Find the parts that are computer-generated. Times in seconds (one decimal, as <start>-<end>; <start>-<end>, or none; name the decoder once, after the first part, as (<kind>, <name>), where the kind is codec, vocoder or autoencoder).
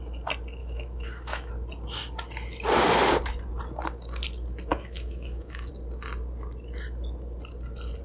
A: 0.6-1.5 (autoencoder, DAC-VAE); 4.7-5.7